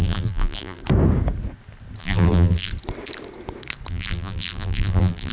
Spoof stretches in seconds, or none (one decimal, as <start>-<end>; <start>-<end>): 0.0-0.8; 2.0-2.7; 3.9-5.3